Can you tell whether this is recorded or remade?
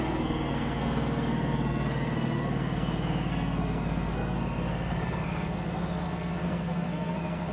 remade